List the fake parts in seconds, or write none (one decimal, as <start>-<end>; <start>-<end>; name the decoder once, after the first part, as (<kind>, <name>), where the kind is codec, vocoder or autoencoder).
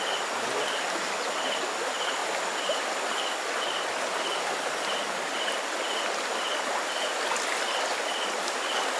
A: none